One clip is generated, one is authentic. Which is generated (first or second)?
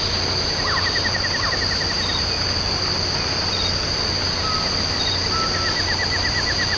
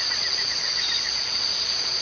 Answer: second